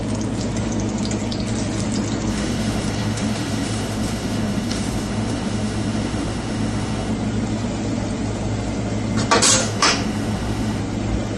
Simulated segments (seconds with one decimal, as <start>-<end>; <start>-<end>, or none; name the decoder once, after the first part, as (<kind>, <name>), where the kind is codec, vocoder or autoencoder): 2.3-7.1 (autoencoder, DAC-VAE); 9.6-10.8